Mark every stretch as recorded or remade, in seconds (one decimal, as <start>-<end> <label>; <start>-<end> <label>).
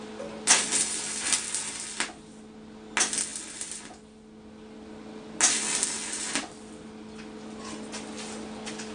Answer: 0.0-8.9 recorded